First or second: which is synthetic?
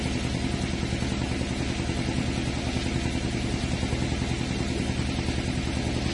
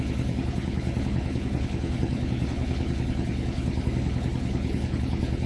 second